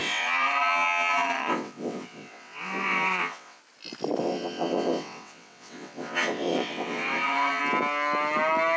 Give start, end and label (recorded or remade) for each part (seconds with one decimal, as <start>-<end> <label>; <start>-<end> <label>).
0.0-3.6 remade; 3.6-4.2 recorded; 4.2-7.6 remade; 7.6-8.8 recorded